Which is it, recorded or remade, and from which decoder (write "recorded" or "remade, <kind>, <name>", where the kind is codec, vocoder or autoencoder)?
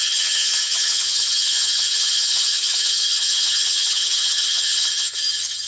remade, vocoder, HiFi-GAN